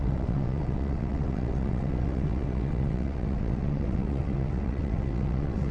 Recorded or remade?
remade